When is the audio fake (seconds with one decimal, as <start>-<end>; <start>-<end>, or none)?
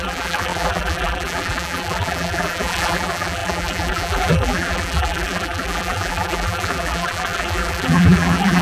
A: 0.0-8.6